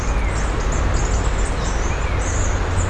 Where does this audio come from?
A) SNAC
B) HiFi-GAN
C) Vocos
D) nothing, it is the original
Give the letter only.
D